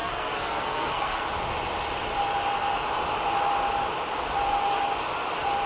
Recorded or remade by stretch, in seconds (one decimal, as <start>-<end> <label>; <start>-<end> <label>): 0.0-1.2 remade; 1.2-5.7 recorded